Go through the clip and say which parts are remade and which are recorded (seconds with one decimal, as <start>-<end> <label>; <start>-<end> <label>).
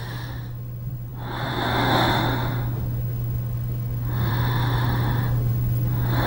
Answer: 0.0-6.3 recorded